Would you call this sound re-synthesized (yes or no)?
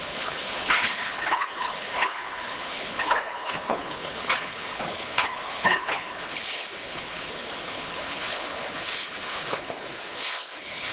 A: yes